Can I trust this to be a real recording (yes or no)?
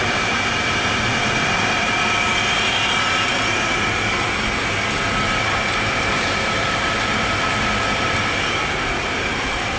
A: no